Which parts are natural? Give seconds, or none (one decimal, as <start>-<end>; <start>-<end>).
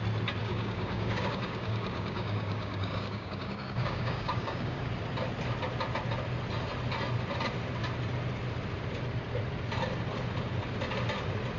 0.0-0.4; 4.9-11.6